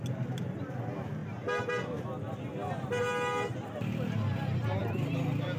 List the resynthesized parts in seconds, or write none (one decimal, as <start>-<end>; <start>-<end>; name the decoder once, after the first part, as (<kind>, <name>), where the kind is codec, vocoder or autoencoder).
none